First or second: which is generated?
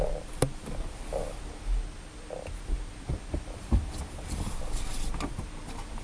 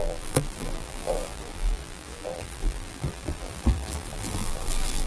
second